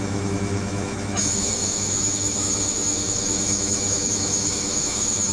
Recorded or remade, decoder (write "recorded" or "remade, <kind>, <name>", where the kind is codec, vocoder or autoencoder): remade, autoencoder, DAC-VAE